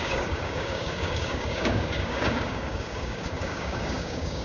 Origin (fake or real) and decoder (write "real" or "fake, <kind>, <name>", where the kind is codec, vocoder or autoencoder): fake, codec, DAC